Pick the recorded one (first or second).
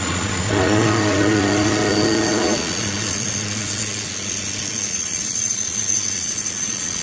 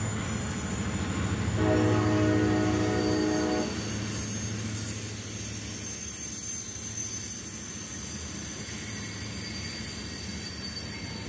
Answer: second